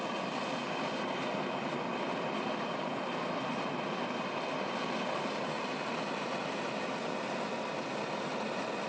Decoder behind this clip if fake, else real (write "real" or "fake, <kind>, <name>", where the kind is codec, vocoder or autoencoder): real